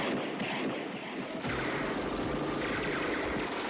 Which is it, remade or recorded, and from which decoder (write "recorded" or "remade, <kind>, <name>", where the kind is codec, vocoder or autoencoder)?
recorded